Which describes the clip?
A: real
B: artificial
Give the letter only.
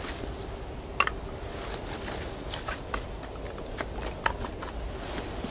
A